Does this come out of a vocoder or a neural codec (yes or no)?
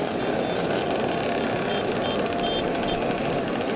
no